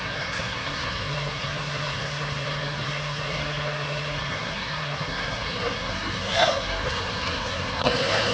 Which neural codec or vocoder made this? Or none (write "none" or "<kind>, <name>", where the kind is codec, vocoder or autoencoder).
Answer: codec, SNAC